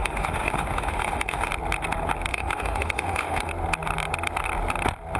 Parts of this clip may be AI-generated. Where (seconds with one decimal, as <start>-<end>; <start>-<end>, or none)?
0.0-1.5; 2.3-3.5

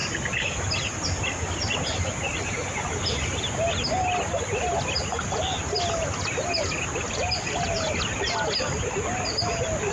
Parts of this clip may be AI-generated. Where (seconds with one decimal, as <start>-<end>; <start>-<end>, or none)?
none